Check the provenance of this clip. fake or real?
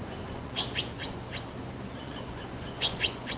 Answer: fake